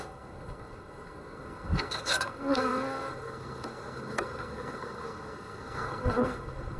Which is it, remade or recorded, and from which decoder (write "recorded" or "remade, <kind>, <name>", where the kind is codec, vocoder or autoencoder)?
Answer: remade, codec, SNAC